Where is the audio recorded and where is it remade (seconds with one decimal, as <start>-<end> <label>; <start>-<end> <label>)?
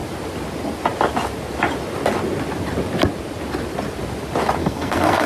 0.0-4.6 recorded; 4.6-5.3 remade